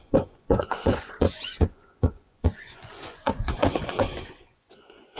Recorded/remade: remade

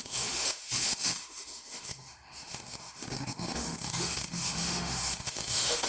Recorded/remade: remade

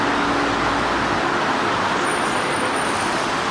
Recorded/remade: recorded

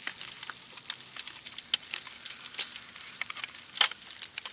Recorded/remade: recorded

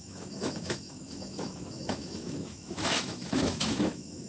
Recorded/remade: remade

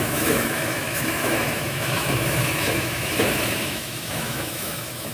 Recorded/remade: remade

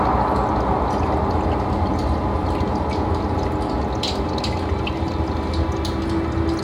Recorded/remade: recorded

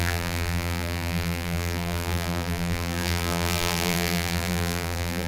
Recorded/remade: remade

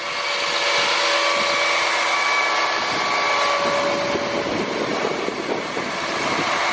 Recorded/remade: recorded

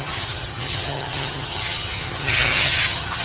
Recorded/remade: remade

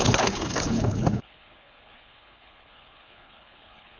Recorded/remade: remade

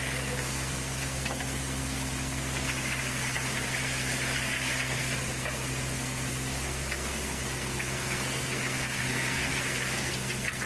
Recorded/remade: remade